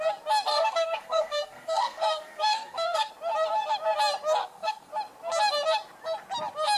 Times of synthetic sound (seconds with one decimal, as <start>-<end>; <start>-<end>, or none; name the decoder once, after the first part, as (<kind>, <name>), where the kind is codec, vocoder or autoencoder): 0.5-3.1 (codec, SNAC); 4.4-4.9